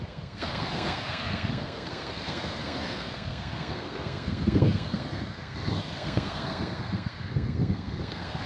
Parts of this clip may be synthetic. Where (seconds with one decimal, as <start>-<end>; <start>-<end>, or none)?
0.0-8.5